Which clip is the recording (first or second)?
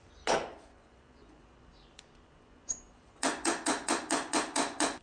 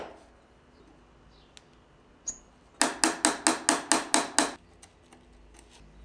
second